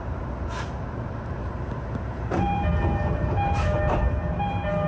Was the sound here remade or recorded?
remade